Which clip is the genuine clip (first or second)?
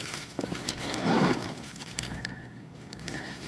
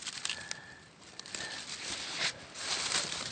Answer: second